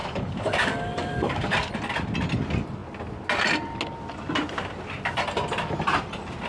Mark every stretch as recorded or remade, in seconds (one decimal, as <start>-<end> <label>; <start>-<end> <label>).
0.0-1.7 remade; 1.7-6.5 recorded